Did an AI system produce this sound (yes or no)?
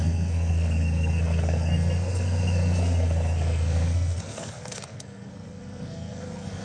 yes